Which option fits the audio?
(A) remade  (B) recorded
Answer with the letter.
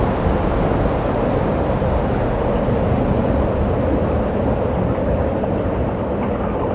B